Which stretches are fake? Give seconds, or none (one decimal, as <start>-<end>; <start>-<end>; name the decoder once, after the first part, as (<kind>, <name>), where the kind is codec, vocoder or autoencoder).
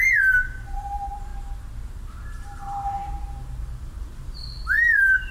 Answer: 0.0-1.3 (vocoder, BigVGAN v2); 1.9-5.3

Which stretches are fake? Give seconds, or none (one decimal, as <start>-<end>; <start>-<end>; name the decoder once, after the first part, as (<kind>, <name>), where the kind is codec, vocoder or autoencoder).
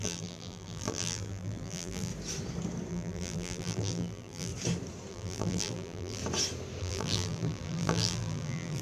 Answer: 0.0-2.1 (vocoder, BigVGAN v2); 2.9-4.5; 5.1-6.2; 6.8-8.8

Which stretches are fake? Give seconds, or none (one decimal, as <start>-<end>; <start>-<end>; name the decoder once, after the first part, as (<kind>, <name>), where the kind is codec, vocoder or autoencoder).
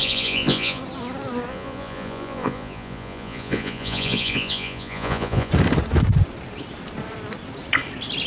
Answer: 0.0-0.8 (vocoder, Vocos); 1.5-5.5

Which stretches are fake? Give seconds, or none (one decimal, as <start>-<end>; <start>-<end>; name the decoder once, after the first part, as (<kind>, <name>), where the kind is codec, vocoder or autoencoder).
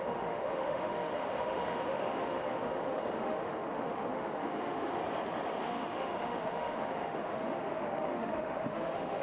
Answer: 0.0-5.0 (autoencoder, DAC-VAE); 5.6-9.2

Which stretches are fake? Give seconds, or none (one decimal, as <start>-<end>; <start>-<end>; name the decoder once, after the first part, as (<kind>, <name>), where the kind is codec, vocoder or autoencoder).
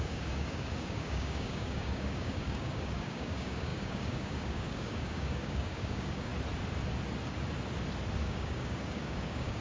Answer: 0.0-6.3 (codec, DAC); 8.2-9.6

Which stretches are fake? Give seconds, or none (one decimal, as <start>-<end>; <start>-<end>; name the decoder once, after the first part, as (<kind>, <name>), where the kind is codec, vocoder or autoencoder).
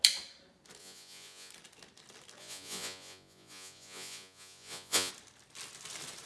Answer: 0.8-1.5 (vocoder, Vocos); 2.4-5.1